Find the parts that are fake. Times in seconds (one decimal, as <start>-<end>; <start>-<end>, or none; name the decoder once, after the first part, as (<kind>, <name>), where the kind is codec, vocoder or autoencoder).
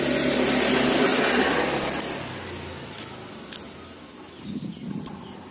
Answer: none